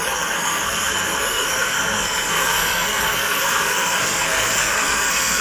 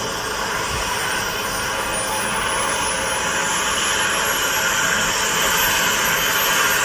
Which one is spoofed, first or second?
first